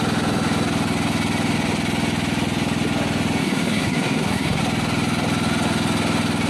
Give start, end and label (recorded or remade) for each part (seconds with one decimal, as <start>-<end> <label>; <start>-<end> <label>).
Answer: 0.0-3.4 recorded; 3.4-4.6 remade; 4.6-6.5 recorded